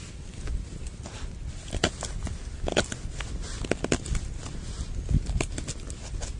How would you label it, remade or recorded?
recorded